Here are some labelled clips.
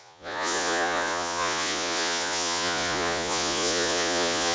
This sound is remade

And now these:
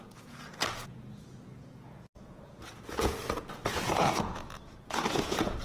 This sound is remade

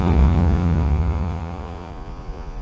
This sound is remade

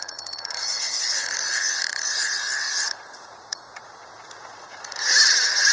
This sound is remade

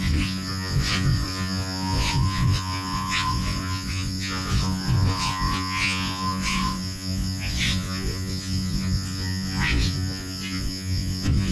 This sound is remade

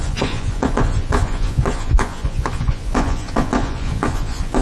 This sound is remade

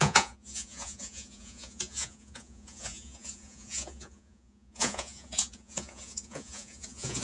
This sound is remade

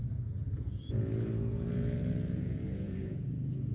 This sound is remade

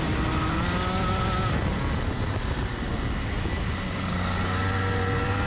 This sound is recorded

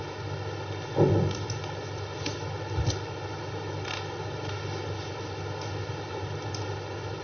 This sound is recorded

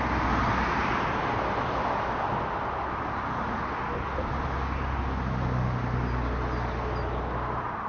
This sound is recorded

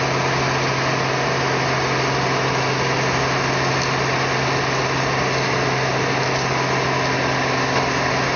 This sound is recorded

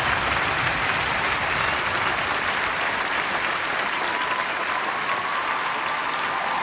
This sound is recorded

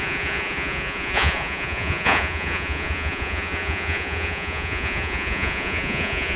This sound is remade